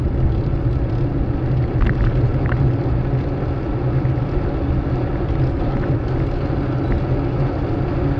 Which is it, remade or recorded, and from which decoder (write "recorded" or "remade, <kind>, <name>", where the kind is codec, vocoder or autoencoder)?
recorded